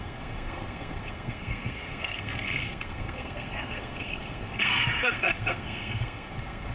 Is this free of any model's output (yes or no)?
no